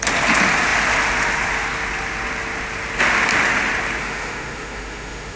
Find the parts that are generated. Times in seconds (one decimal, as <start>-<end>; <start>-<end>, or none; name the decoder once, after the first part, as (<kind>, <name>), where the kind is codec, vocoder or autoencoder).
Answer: 4.0-5.4 (autoencoder, DAC-VAE)